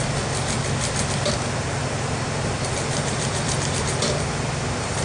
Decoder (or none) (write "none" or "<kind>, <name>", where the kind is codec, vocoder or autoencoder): none